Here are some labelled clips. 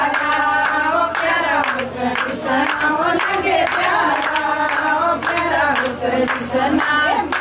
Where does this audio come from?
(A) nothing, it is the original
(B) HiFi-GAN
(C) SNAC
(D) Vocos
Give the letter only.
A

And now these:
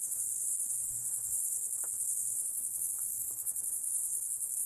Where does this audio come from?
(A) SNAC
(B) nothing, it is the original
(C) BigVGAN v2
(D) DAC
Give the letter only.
A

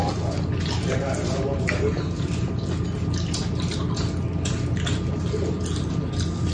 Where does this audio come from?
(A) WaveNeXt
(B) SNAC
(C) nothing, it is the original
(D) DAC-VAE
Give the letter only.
C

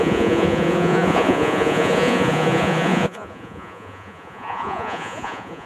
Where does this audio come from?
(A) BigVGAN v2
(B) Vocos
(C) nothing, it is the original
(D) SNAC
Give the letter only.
B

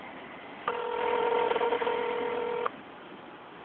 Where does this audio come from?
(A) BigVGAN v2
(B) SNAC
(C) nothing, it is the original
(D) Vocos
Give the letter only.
C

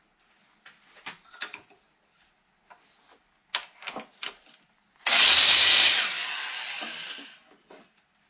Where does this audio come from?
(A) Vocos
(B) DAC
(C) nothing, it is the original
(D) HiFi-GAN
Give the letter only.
C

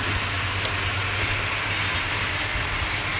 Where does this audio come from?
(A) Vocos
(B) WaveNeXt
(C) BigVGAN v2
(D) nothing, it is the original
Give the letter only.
D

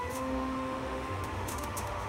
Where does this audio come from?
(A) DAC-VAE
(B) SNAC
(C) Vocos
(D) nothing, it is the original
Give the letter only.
A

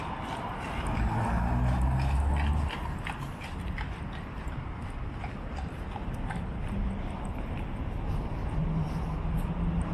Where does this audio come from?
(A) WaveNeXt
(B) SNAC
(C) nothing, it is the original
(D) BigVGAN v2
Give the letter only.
C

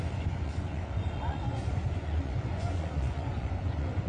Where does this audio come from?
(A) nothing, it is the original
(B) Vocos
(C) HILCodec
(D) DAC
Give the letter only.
B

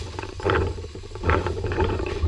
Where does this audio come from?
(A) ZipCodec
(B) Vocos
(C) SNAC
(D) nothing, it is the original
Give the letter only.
B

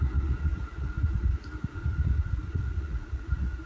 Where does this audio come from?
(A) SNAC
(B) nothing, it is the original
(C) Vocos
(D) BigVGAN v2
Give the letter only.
C